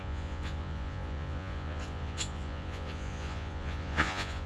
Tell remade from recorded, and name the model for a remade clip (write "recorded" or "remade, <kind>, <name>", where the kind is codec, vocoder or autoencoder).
remade, vocoder, Vocos